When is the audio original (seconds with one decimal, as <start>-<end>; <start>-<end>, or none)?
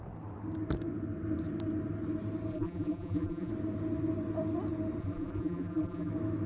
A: 0.0-2.5; 3.5-5.0; 6.1-6.5